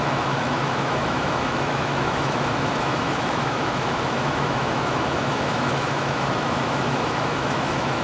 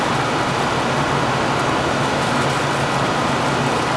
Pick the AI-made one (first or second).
first